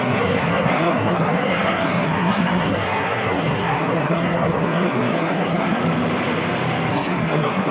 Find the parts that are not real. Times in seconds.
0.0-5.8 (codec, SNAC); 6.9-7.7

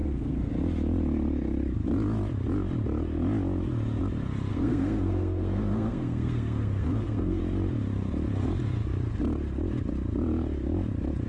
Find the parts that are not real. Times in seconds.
0.0-0.5 (codec, SNAC); 4.5-7.4

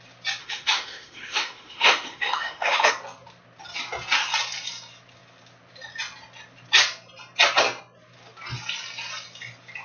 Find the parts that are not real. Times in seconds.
0.4-2.9 (autoencoder, DAC-VAE)

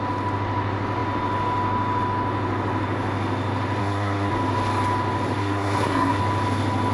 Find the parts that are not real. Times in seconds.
3.8-4.3 (codec, SNAC); 5.4-6.2

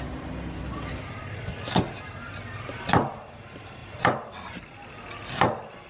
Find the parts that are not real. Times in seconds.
none

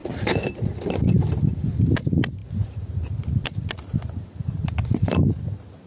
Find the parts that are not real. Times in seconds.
none

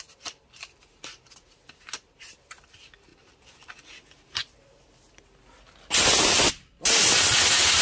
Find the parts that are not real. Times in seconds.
none